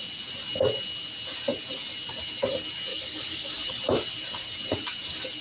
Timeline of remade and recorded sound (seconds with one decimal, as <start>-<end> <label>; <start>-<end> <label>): 0.0-2.9 recorded; 2.9-3.7 remade; 3.7-5.4 recorded